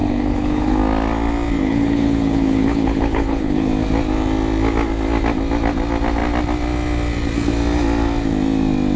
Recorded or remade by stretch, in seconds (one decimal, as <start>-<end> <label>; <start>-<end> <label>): 0.0-0.8 remade; 0.8-1.6 recorded; 1.6-3.7 remade; 3.7-9.0 recorded